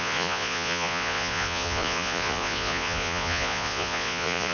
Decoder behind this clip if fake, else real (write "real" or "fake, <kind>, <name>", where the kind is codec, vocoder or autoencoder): fake, vocoder, Vocos